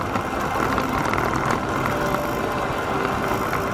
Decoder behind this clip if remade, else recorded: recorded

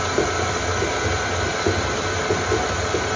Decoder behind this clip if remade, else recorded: remade, vocoder, BigVGAN v2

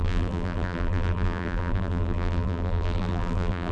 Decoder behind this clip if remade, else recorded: remade, vocoder, BigVGAN v2